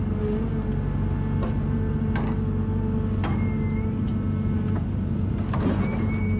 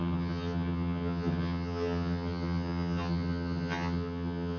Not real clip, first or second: second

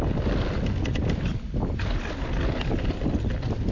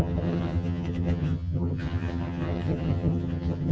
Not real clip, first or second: second